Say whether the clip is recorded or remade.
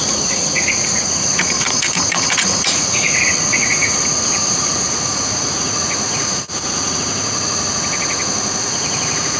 remade